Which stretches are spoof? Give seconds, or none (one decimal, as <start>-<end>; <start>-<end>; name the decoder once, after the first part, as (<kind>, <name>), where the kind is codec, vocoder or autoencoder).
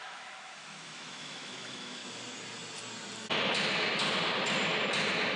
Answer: 0.0-2.0 (autoencoder, DAC-VAE)